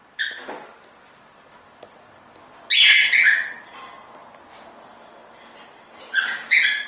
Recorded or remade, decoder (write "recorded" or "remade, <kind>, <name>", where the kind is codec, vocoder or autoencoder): recorded